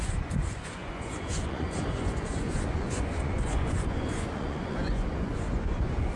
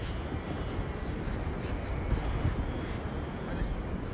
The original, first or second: second